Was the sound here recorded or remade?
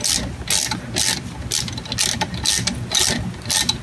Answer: recorded